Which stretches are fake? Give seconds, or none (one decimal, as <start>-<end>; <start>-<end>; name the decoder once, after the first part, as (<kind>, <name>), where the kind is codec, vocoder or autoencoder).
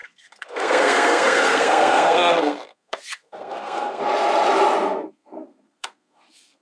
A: 0.0-4.0 (codec, SNAC); 4.8-6.6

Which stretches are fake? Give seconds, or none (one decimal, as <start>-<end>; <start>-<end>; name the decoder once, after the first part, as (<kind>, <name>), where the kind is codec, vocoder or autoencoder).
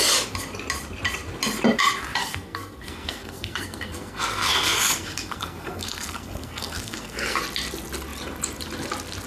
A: 2.2-7.4 (codec, SNAC)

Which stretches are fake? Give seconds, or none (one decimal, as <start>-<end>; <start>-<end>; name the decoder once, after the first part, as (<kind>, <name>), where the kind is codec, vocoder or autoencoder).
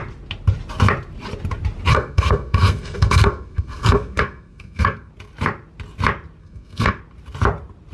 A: 1.9-5.1 (codec, SNAC); 6.4-7.0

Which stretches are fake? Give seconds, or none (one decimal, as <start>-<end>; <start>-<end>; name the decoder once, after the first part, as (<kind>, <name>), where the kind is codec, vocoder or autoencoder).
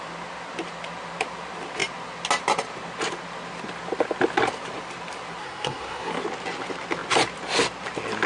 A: 5.4-6.1 (codec, SNAC)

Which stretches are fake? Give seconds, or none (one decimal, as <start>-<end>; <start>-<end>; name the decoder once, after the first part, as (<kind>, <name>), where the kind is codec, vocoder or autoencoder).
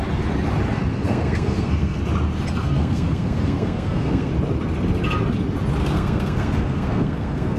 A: 0.9-2.0 (codec, SNAC); 2.6-4.3; 5.8-7.6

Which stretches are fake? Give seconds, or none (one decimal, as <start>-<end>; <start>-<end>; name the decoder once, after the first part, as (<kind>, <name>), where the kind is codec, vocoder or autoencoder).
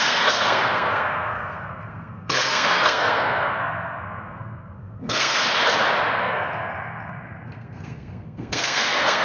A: 0.0-5.4 (codec, SNAC); 6.2-9.2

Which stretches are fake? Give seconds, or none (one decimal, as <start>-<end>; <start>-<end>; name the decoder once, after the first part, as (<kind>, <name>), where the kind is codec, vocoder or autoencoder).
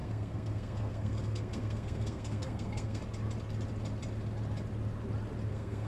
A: 0.0-3.0 (codec, SNAC); 5.5-5.9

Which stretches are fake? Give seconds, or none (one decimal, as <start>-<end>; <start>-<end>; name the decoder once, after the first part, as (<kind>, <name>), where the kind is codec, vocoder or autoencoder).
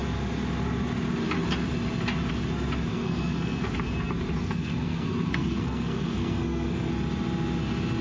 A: 2.9-3.7 (codec, SNAC); 4.4-6.9